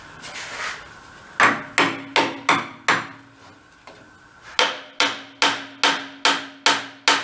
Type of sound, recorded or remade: recorded